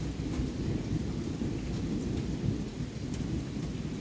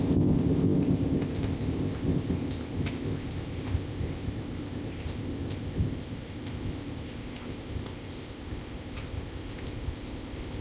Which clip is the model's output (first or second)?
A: second